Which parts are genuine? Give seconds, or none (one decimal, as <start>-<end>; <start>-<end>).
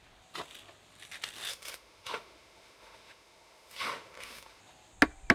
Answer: 0.0-1.5; 4.6-5.3